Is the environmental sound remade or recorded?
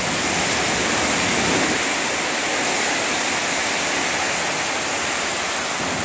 recorded